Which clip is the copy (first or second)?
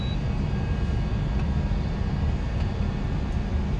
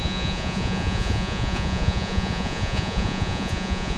second